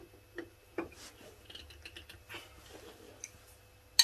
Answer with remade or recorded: recorded